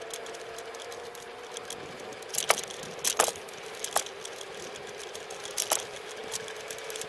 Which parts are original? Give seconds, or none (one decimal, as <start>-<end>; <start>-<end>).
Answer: 0.0-6.2